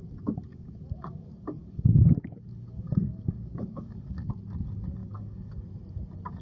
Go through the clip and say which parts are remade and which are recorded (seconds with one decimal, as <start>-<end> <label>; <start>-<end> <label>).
0.0-0.5 recorded; 0.5-4.3 remade; 4.3-5.0 recorded; 5.0-5.6 remade; 5.6-6.4 recorded